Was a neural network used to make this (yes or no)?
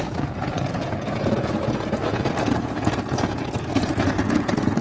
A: yes